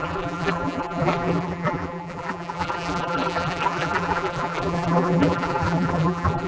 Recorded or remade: remade